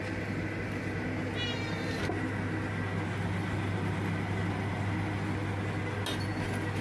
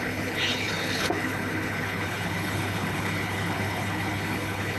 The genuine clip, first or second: first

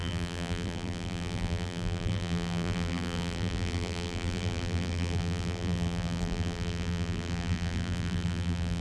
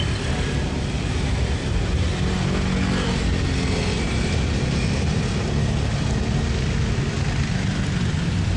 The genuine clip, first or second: second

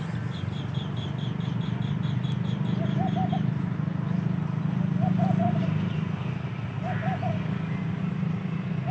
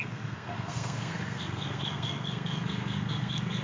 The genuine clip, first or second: first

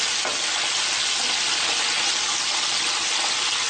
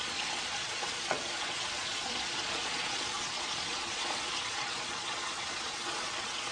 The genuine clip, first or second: first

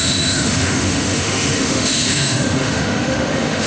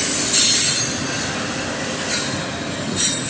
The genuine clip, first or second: second